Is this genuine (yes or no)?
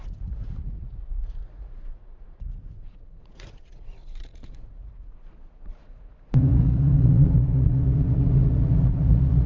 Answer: no